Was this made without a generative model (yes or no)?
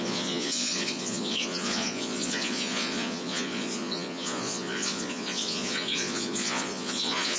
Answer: no